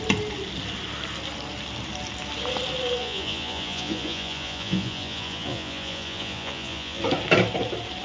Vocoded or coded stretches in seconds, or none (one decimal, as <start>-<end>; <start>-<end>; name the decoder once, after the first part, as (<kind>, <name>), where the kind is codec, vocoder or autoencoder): 3.0-7.0 (vocoder, Vocos)